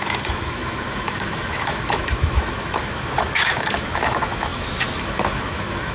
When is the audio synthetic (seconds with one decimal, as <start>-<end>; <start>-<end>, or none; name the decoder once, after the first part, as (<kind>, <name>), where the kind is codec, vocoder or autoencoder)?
0.0-5.9 (autoencoder, DAC-VAE)